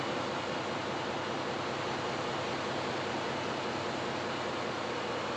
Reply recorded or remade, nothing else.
recorded